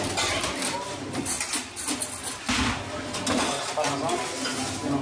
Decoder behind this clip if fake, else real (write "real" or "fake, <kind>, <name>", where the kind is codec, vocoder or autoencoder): real